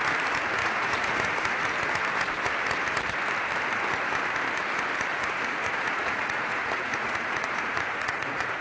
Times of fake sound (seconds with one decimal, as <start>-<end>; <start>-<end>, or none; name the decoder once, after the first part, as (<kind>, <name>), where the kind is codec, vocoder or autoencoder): 0.6-1.7 (vocoder, Vocos); 5.1-8.6